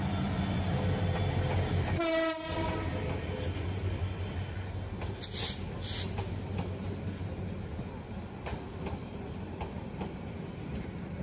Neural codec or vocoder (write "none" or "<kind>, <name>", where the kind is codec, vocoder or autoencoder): none